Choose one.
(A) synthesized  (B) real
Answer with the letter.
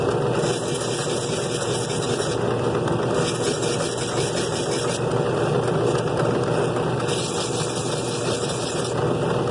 B